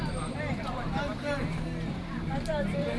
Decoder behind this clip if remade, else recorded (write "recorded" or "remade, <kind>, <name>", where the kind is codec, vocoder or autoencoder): remade, vocoder, BigVGAN v2